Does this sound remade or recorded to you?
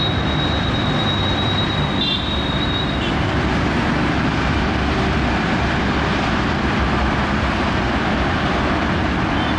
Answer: remade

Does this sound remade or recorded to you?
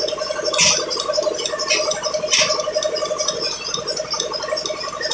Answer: recorded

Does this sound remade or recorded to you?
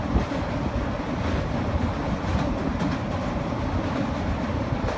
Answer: recorded